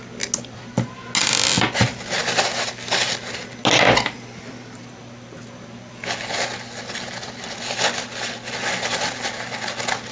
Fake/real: real